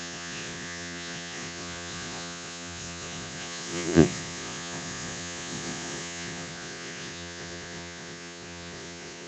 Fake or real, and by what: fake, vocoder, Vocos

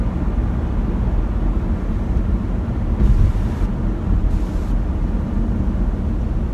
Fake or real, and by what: real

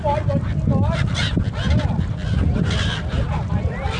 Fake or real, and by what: real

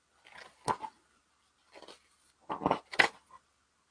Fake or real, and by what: real